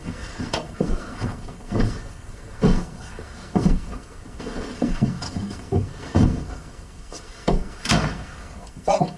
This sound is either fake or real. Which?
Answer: fake